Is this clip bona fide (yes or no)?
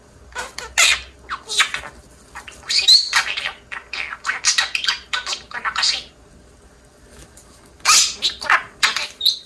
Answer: yes